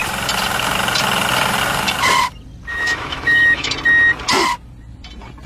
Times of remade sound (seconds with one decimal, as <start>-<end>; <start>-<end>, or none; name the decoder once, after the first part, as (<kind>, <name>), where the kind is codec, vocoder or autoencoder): 2.7-3.7 (autoencoder, DAC-VAE)